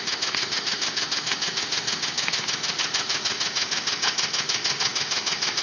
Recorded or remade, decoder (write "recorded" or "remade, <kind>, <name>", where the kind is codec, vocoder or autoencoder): remade, autoencoder, DAC-VAE